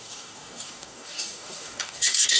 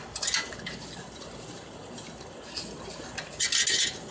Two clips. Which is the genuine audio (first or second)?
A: second